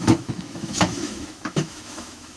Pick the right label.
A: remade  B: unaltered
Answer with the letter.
A